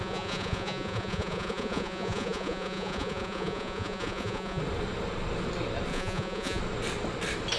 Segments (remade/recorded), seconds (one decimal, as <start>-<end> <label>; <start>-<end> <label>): 0.0-4.6 remade; 4.6-5.9 recorded; 5.9-6.6 remade; 6.6-7.6 recorded